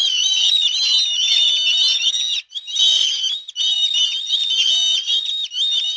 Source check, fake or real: real